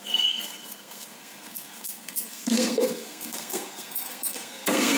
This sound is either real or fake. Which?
fake